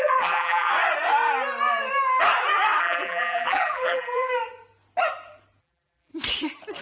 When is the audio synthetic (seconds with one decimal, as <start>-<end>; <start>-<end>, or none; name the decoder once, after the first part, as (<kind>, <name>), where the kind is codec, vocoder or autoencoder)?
0.0-0.7 (vocoder, BigVGAN v2); 2.8-4.3; 5.6-6.1